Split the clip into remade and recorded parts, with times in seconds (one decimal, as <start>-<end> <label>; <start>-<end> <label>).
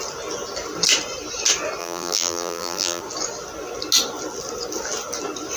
0.0-1.8 recorded; 1.8-3.0 remade; 3.0-5.6 recorded